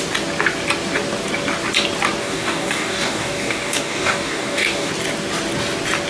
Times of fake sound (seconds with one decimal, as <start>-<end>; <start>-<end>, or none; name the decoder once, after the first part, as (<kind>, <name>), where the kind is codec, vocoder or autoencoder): 2.2-4.9 (codec, DAC)